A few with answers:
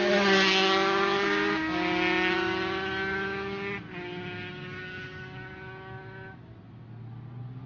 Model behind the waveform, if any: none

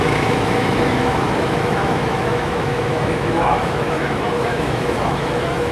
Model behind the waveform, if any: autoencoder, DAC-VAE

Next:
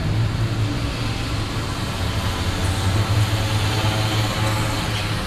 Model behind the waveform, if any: none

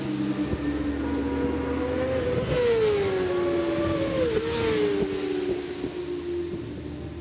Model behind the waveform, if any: none